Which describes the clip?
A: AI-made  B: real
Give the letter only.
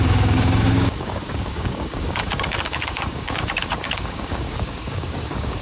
A